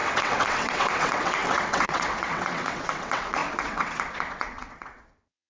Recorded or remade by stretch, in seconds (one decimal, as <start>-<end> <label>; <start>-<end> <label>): 0.0-5.5 remade